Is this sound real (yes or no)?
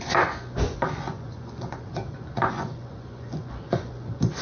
no